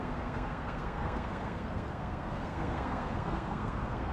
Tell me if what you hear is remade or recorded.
remade